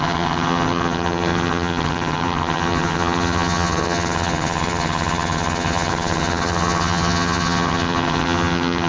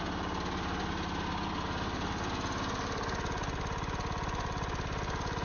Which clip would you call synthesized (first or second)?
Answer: first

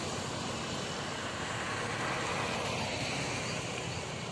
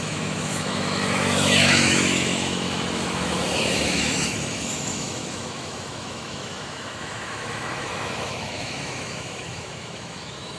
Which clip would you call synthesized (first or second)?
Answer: second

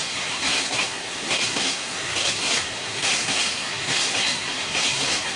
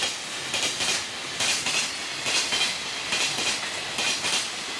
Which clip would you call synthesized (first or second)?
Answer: first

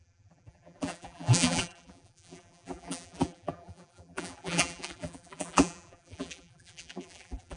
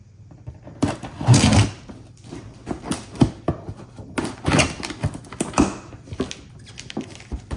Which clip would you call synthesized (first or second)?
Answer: first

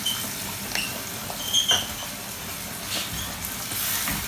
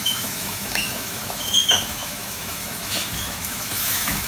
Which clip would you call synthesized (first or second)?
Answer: second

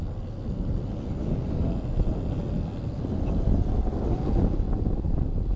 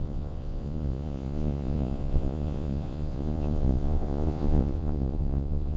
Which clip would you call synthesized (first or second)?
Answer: second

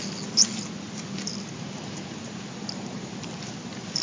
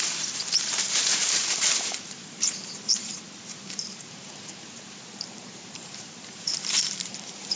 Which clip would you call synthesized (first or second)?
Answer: second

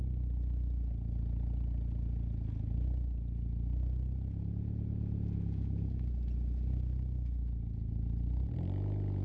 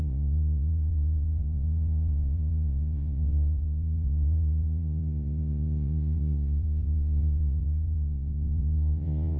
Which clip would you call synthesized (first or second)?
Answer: second